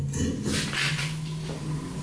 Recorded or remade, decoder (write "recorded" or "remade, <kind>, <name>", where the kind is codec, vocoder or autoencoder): recorded